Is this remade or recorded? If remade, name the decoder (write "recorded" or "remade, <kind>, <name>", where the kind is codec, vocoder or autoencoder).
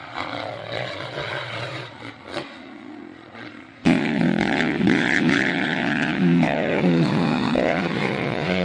remade, vocoder, Vocos